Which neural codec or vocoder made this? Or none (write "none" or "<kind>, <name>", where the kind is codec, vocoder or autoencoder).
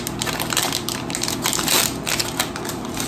none